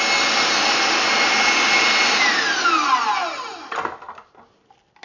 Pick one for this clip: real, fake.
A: real